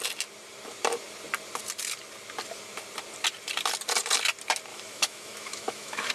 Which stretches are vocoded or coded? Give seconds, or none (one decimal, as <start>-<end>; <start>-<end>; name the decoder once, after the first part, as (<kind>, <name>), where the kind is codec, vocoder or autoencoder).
4.7-6.1 (autoencoder, DAC-VAE)